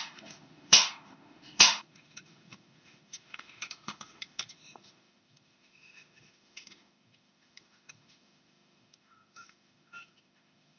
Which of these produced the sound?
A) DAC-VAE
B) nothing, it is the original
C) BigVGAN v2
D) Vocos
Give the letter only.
A